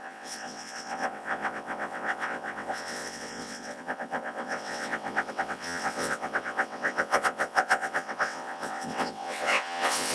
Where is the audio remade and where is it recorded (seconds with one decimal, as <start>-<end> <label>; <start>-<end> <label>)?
0.0-10.1 remade